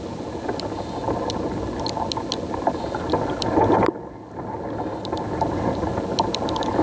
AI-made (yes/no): no